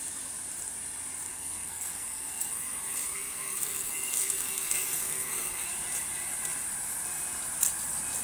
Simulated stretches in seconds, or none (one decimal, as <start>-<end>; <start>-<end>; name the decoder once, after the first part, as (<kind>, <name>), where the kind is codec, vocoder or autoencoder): 1.3-5.7 (codec, SNAC)